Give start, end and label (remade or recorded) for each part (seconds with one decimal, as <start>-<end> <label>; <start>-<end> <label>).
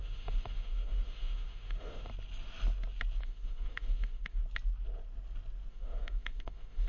0.0-2.1 remade; 2.1-3.2 recorded; 3.2-4.4 remade; 4.4-5.7 recorded; 5.7-6.9 remade